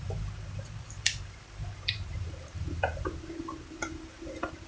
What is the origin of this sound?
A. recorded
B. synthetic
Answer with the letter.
B